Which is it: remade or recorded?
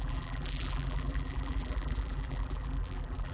remade